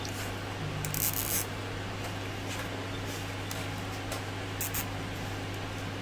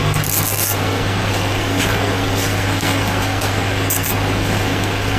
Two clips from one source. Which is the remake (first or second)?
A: second